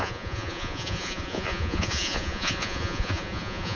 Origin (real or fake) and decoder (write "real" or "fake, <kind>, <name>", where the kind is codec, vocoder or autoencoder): fake, vocoder, Vocos